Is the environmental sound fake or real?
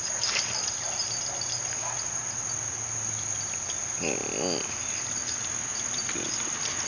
real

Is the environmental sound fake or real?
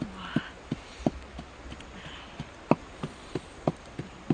real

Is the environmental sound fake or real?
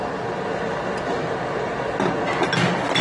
real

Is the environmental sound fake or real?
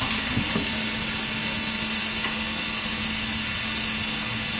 real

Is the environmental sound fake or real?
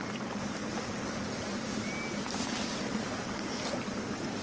real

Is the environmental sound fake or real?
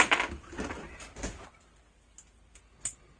real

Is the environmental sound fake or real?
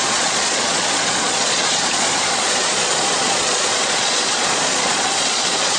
fake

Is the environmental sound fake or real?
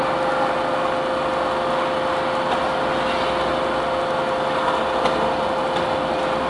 real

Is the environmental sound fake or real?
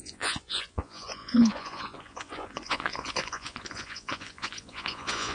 fake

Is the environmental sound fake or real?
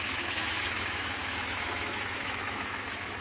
fake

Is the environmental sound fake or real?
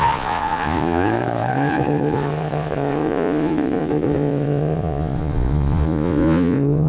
fake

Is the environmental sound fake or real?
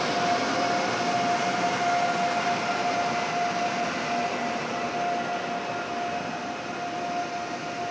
real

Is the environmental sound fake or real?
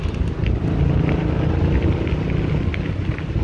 real